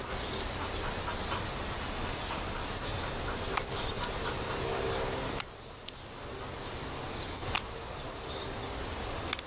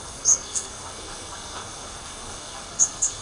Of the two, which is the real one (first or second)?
first